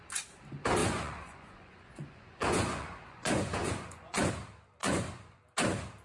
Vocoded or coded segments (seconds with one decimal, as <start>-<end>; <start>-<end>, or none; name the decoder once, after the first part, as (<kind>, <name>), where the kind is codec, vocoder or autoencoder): 0.8-4.3 (vocoder, Vocos); 4.8-5.4